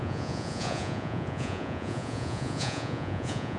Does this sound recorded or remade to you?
remade